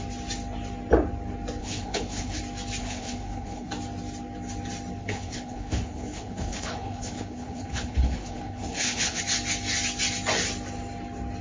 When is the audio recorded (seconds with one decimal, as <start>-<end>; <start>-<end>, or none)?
0.0-1.6; 2.4-2.8; 3.7-5.0; 9.2-11.4